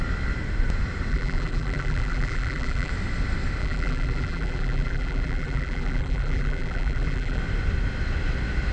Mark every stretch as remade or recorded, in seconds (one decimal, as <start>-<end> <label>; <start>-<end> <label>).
0.0-1.1 recorded; 1.1-2.9 remade; 2.9-3.6 recorded; 3.6-7.4 remade; 7.4-8.7 recorded